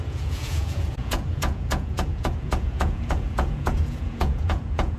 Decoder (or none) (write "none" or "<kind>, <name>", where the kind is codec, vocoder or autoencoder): vocoder, Vocos